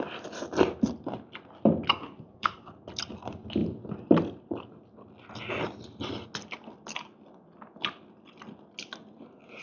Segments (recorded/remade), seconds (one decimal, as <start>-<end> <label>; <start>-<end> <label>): 0.0-1.9 recorded; 1.9-2.7 remade; 2.7-9.6 recorded